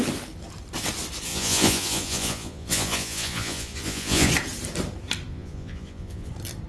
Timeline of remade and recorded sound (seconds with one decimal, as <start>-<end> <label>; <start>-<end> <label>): 0.0-1.3 recorded; 1.3-4.3 remade; 4.3-5.3 recorded; 5.3-6.3 remade; 6.3-6.7 recorded